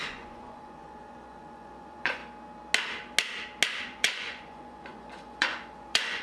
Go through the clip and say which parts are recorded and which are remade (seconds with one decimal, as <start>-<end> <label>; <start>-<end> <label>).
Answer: 0.0-2.2 remade; 2.2-3.8 recorded; 3.8-6.2 remade